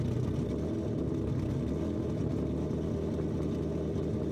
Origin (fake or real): real